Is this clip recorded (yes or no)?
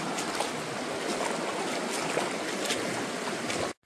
yes